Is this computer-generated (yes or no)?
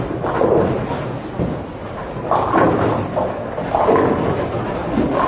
no